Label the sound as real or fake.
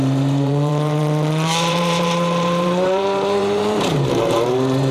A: fake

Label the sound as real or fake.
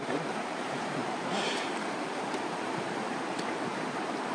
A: fake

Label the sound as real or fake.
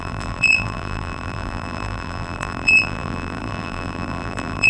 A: fake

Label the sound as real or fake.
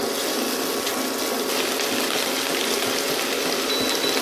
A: real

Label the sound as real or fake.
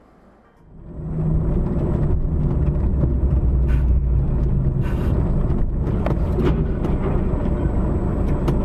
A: real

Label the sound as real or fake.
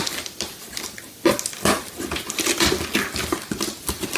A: real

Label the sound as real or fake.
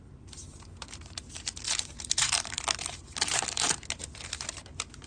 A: fake